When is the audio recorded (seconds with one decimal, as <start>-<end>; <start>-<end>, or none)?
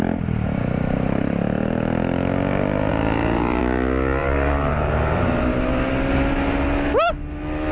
0.0-2.9; 3.6-4.2; 5.6-7.7